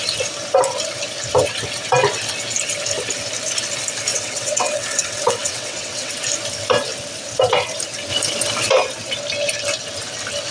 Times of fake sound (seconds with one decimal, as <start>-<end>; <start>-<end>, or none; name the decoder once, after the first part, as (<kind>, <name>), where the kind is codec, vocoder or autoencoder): 4.1-6.1 (vocoder, WaveNeXt)